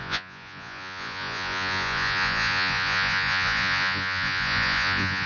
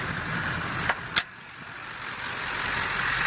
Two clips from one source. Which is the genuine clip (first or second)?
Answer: second